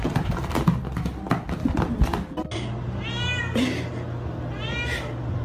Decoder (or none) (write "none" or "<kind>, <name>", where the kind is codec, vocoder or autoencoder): none